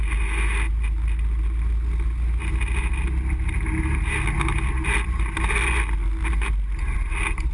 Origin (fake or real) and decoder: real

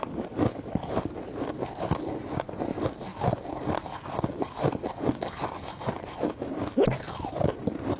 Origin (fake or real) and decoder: real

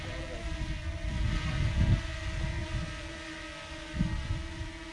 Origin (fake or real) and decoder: real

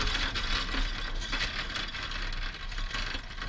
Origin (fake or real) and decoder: real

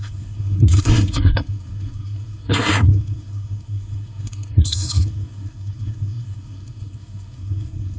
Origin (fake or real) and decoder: fake, codec, SNAC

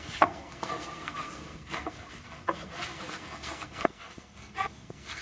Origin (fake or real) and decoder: fake, codec, SNAC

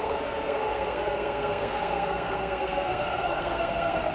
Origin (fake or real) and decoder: fake, codec, SNAC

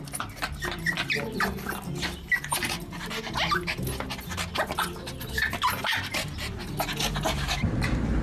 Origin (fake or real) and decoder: real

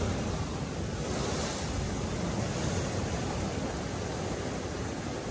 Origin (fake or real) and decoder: real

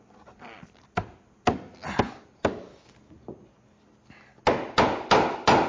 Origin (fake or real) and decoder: real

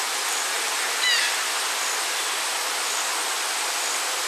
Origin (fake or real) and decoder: real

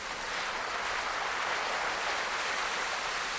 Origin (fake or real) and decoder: real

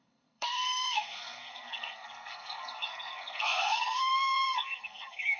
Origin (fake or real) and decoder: fake, codec, SNAC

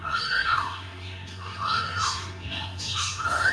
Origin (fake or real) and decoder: fake, codec, SNAC